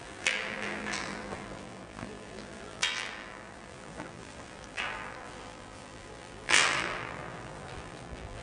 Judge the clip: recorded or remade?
remade